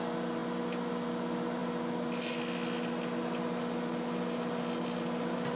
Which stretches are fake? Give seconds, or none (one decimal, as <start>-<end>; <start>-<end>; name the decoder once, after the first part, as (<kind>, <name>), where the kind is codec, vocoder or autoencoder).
none

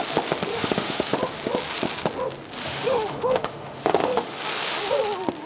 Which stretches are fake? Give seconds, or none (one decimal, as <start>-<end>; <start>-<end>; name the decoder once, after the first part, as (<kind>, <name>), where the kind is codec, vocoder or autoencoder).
0.5-1.2 (autoencoder, DAC-VAE); 2.6-4.4

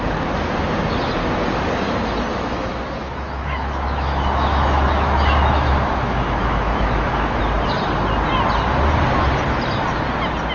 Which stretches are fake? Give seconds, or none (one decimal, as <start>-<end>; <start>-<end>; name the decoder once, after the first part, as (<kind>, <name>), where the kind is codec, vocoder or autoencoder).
2.3-7.4 (autoencoder, DAC-VAE)

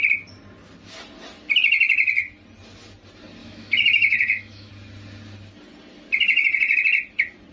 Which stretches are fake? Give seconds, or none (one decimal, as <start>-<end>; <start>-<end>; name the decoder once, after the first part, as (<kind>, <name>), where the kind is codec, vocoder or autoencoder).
3.4-4.7 (autoencoder, DAC-VAE)

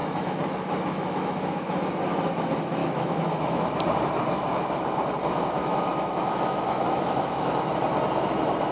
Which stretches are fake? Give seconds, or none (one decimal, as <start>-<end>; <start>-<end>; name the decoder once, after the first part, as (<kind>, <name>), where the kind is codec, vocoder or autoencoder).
0.0-2.0 (autoencoder, DAC-VAE); 2.8-3.7; 5.6-7.6

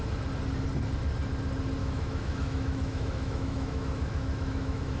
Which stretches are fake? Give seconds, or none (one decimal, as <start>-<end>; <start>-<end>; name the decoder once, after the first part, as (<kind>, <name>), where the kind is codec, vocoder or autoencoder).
1.8-5.0 (autoencoder, DAC-VAE)

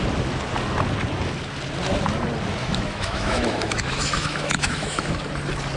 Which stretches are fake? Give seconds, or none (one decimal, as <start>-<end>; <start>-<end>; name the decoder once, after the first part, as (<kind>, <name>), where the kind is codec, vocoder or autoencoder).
2.6-5.2 (autoencoder, DAC-VAE)